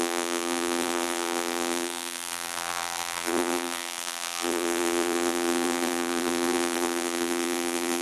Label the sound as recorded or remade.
remade